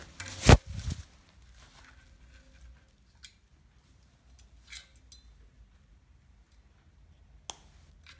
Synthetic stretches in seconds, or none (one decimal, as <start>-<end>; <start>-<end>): none